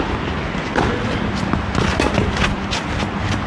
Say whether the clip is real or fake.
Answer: real